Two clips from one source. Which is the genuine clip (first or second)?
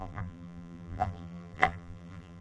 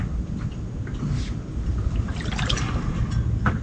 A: second